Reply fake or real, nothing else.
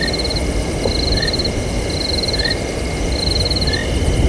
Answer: real